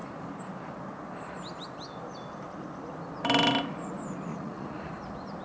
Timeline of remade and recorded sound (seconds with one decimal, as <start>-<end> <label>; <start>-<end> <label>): 0.0-4.3 recorded; 4.3-4.9 remade; 4.9-5.4 recorded